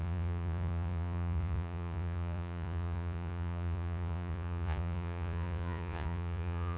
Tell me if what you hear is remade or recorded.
remade